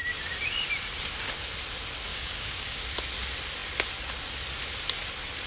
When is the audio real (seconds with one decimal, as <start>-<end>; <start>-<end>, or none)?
0.0-2.1; 2.8-5.5